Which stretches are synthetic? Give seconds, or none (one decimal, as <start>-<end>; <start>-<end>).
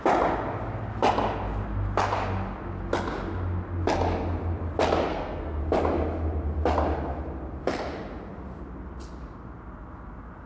5.1-5.6